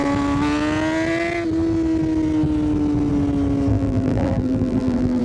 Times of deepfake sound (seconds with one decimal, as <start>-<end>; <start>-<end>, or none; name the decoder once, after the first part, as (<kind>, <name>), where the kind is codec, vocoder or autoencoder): 3.7-5.2 (vocoder, BigVGAN v2)